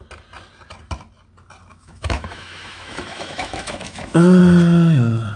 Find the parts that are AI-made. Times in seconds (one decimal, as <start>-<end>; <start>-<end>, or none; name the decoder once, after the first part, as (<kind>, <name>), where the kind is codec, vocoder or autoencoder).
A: 1.7-4.4 (autoencoder, DAC-VAE)